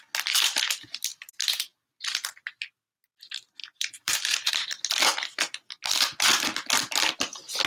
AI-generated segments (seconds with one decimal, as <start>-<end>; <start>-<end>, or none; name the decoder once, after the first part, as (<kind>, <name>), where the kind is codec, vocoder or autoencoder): 3.6-4.5 (vocoder, BigVGAN v2); 5.1-5.7